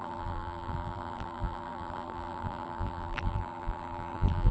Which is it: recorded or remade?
remade